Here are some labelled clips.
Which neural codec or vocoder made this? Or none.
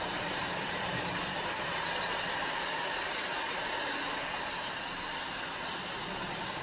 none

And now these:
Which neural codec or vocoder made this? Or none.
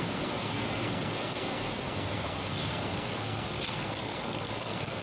codec, SNAC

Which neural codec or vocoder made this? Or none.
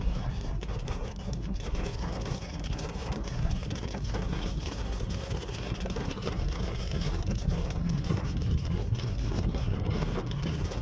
codec, SNAC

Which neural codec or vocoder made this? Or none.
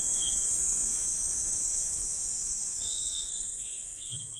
codec, SNAC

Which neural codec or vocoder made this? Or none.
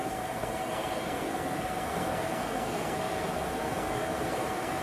codec, SNAC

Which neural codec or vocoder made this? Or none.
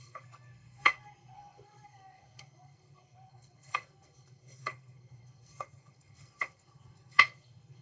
codec, SNAC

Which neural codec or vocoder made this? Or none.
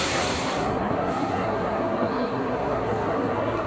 codec, SNAC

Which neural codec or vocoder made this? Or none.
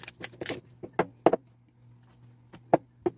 none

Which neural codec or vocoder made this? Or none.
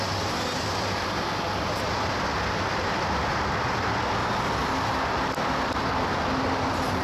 none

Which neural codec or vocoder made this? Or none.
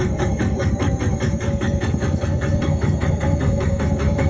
codec, SNAC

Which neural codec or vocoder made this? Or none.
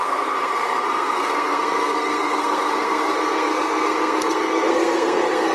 codec, SNAC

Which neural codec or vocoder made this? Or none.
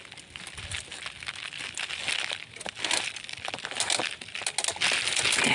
none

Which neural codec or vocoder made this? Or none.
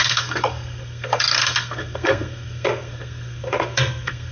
codec, SNAC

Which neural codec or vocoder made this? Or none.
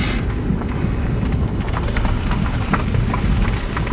none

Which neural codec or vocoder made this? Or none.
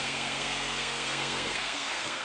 codec, SNAC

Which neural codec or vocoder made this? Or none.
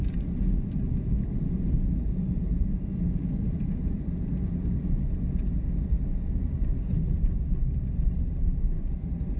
none